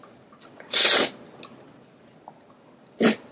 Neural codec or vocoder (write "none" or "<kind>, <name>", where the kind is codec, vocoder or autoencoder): none